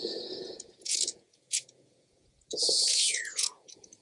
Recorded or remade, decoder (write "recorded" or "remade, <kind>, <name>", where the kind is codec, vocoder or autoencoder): remade, vocoder, Vocos